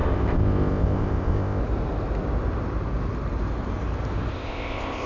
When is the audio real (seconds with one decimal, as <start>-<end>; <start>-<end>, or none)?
1.6-4.3